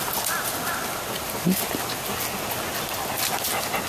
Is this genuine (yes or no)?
yes